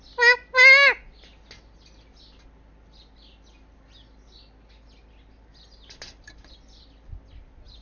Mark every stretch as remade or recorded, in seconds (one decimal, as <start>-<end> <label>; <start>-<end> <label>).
0.0-7.8 recorded

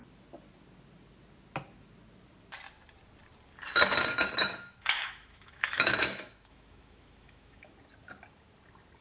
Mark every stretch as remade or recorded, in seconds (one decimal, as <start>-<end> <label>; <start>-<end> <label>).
0.0-4.4 recorded; 4.4-7.7 remade; 7.7-9.0 recorded

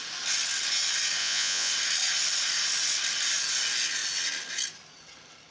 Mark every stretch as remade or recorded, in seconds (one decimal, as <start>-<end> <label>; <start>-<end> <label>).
0.0-1.2 recorded; 1.2-1.7 remade; 1.7-5.5 recorded

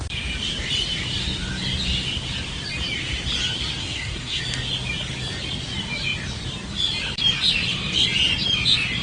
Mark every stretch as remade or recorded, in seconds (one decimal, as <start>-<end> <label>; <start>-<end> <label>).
0.0-3.8 recorded; 3.8-4.4 remade; 4.4-9.0 recorded

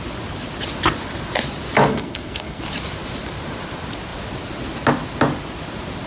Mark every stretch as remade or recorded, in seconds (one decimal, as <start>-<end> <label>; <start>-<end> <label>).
0.0-1.9 recorded; 1.9-2.6 remade; 2.6-6.1 recorded

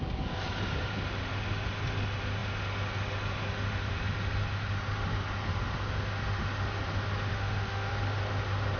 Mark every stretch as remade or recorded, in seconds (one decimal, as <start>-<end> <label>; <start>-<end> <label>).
0.0-7.3 recorded; 7.3-7.9 remade; 7.9-8.8 recorded

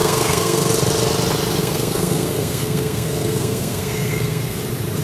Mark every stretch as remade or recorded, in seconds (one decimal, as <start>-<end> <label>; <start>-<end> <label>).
0.0-0.7 remade; 0.7-1.6 recorded; 1.6-4.6 remade; 4.6-5.0 recorded

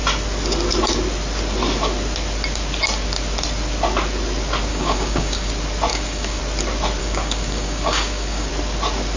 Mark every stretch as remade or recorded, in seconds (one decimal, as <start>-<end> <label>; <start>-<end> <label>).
0.0-4.7 recorded; 4.7-5.5 remade; 5.5-5.9 recorded; 5.9-6.4 remade; 6.4-7.0 recorded; 7.0-8.5 remade; 8.5-9.2 recorded